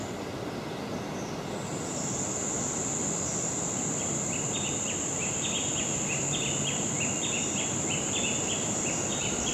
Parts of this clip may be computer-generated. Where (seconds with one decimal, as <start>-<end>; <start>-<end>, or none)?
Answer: none